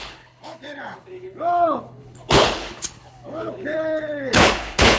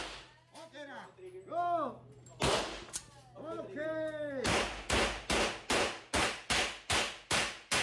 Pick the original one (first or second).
second